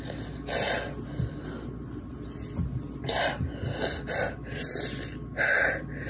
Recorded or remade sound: recorded